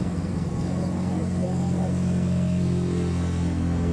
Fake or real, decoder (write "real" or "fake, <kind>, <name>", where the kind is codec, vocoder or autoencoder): fake, codec, SNAC